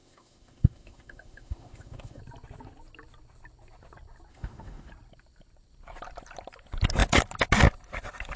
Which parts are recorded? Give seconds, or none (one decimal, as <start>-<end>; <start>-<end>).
2.2-4.3; 4.9-8.4